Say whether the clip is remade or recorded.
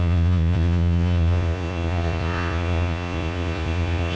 remade